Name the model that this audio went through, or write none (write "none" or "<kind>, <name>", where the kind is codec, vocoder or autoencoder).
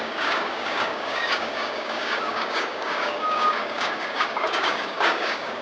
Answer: codec, DAC